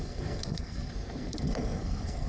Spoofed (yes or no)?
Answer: yes